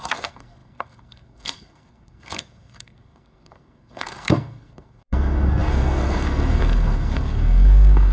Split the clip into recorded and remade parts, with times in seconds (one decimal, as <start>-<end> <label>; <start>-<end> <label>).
0.0-8.1 remade